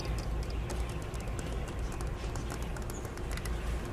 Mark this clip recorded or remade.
recorded